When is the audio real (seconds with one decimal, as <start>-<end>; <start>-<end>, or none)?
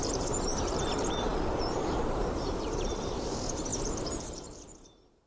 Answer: none